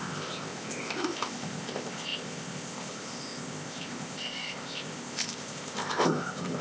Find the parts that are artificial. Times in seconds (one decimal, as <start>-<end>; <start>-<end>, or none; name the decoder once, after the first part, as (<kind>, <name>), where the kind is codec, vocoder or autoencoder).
0.0-6.6 (codec, ZipCodec)